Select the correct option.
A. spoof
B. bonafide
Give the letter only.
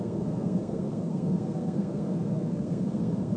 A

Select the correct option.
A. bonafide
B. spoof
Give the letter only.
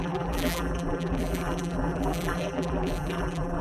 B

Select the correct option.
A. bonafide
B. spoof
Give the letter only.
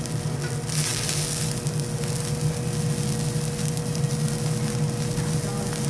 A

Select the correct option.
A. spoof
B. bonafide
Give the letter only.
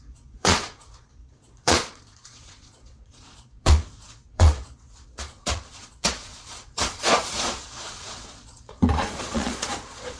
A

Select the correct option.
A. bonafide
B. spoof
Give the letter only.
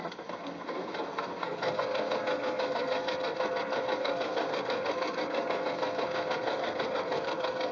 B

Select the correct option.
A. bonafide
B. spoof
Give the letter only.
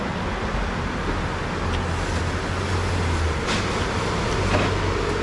A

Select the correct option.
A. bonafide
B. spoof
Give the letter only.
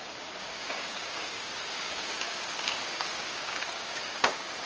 B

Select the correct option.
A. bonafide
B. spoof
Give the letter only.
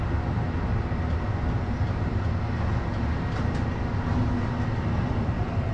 A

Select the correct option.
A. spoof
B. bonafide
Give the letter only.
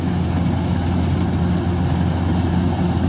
B